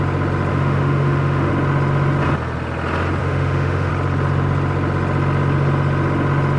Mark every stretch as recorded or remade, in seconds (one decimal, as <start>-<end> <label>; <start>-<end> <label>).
0.0-0.5 recorded; 0.5-1.5 remade; 1.5-3.2 recorded; 3.2-3.9 remade; 3.9-6.6 recorded